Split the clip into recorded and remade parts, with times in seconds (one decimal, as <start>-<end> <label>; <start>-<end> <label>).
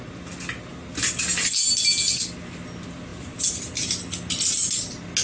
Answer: 0.0-3.1 recorded; 3.1-3.9 remade; 3.9-5.2 recorded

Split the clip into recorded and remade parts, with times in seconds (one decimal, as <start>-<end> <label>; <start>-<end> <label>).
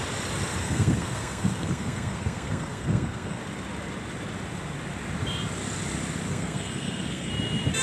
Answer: 0.0-0.6 recorded; 0.6-3.4 remade; 3.4-6.3 recorded; 6.3-7.3 remade; 7.3-7.8 recorded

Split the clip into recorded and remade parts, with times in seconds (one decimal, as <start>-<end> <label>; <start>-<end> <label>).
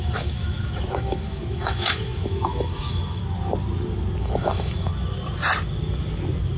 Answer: 0.0-3.2 remade; 3.2-4.2 recorded; 4.2-4.9 remade; 4.9-6.6 recorded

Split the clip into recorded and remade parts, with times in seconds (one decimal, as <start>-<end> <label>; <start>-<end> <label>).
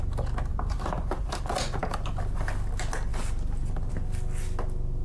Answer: 0.0-0.5 recorded; 0.5-1.3 remade; 1.3-5.0 recorded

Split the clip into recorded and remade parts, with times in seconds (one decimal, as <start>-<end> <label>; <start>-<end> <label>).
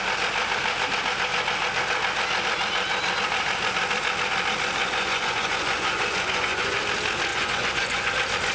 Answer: 0.0-4.8 recorded; 4.8-6.8 remade; 6.8-7.3 recorded; 7.3-8.1 remade; 8.1-8.5 recorded